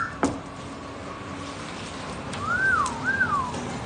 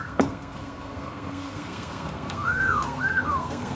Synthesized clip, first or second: second